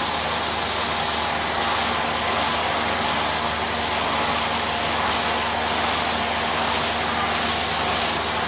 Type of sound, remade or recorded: recorded